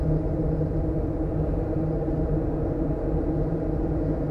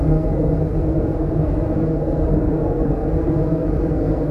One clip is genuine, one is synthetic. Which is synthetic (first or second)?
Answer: second